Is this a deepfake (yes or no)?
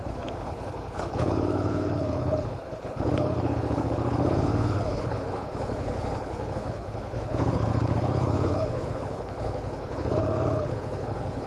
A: yes